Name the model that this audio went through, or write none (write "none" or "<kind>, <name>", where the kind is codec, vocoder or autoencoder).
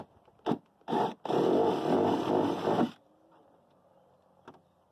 none